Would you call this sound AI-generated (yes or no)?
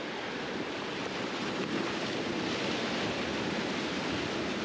no